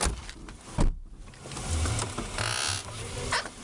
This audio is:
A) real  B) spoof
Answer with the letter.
A